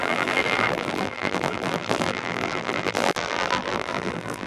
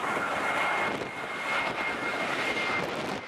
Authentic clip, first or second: second